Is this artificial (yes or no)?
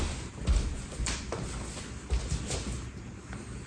no